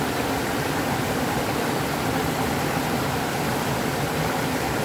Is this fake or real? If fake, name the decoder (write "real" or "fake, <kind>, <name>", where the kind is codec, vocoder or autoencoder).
real